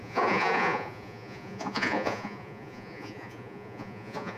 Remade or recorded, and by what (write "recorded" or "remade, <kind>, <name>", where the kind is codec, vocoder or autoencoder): remade, vocoder, Vocos